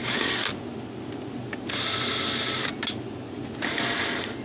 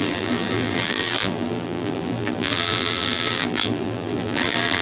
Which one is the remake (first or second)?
second